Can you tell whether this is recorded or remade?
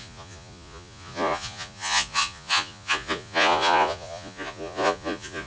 remade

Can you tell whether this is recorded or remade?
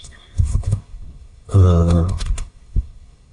remade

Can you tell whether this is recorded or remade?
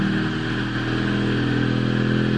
recorded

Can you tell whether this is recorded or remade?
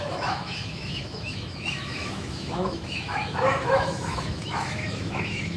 remade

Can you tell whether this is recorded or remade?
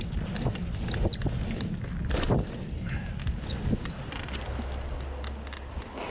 recorded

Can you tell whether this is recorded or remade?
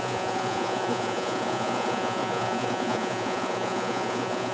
remade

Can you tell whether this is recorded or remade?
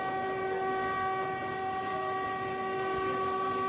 recorded